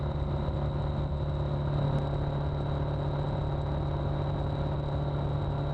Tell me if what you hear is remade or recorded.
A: recorded